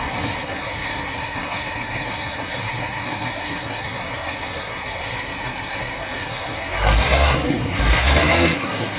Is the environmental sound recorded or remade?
remade